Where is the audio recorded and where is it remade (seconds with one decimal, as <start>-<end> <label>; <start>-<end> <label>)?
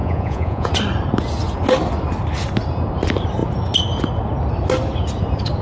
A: 0.0-0.7 remade; 0.7-5.6 recorded